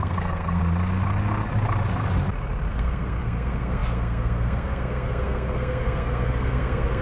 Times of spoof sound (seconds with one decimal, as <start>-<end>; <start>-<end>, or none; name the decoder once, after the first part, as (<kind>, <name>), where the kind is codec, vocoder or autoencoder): 0.0-0.6 (codec, SNAC); 2.7-7.0